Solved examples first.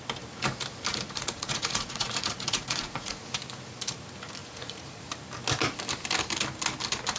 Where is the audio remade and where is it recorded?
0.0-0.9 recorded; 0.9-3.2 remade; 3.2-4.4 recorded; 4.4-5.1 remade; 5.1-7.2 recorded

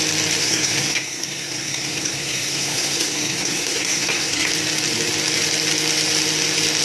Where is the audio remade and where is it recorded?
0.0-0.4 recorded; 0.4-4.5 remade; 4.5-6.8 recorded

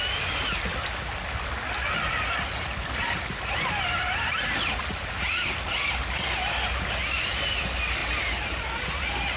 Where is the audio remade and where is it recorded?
0.0-9.4 recorded

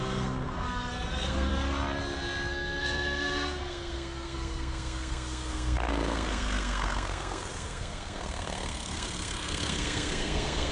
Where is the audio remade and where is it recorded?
0.0-1.5 remade; 1.5-2.5 recorded; 2.5-10.7 remade

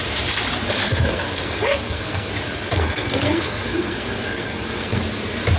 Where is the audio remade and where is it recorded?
0.0-0.8 recorded; 0.8-2.3 remade; 2.3-2.7 recorded; 2.7-5.0 remade; 5.0-5.6 recorded

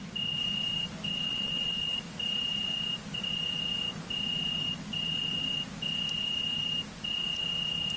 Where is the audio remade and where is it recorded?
0.0-1.3 recorded; 1.3-2.0 remade; 2.0-8.0 recorded